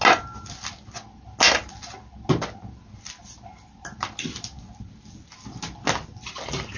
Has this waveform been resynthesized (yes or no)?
no